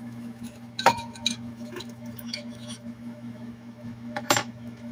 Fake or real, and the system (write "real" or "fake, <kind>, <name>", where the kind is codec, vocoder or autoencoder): fake, autoencoder, DAC-VAE